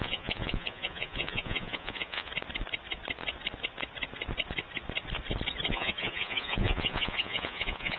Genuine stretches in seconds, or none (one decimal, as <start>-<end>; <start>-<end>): 2.3-5.7